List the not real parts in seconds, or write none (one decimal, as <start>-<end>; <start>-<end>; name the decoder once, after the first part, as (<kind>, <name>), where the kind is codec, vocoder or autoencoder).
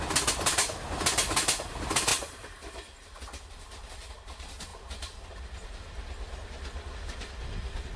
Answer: none